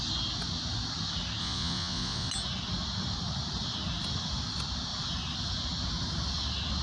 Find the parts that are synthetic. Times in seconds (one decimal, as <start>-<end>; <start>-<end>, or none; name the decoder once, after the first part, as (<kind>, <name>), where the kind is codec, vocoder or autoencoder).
1.4-2.3 (vocoder, Vocos)